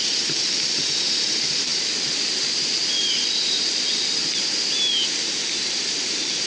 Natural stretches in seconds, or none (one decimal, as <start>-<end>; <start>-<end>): 0.0-6.5